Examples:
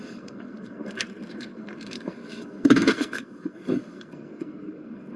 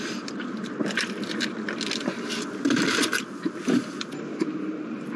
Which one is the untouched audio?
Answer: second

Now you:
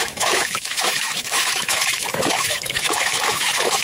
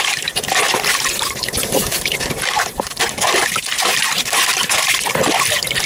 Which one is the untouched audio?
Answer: second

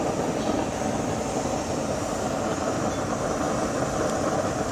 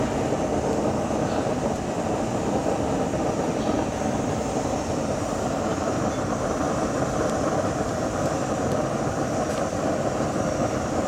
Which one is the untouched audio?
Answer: first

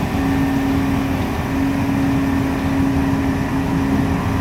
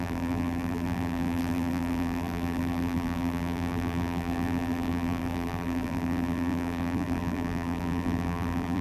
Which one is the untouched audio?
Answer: first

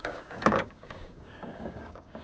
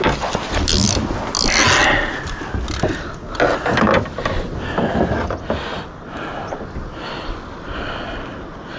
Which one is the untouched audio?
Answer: second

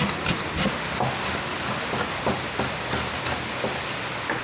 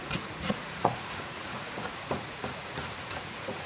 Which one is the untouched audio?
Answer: first